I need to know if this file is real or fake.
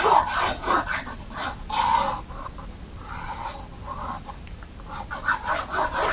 real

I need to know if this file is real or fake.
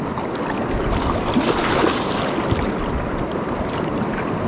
real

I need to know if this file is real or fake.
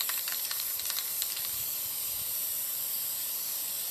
fake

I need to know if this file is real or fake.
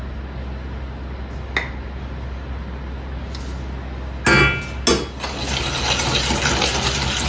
real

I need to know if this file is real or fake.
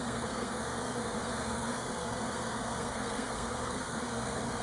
fake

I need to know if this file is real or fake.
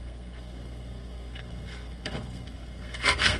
fake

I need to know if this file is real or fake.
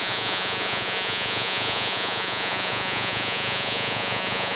fake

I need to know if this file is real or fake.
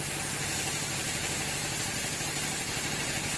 fake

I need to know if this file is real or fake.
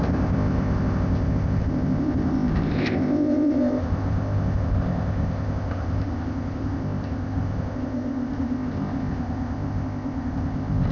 fake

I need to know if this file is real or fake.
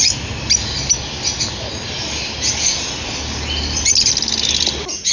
real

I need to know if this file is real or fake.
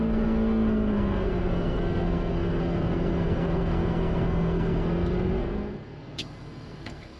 fake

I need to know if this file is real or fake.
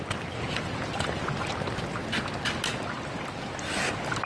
real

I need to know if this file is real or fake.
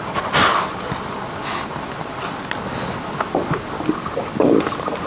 real